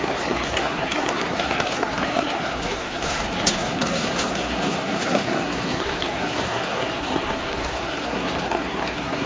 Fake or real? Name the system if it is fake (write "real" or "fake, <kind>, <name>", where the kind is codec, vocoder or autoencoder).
fake, codec, SNAC